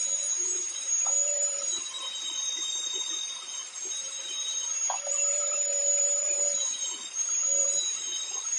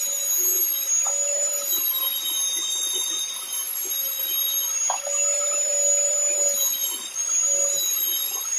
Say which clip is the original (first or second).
second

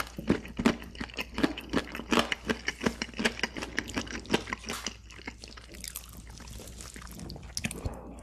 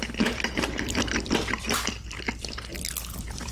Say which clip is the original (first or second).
first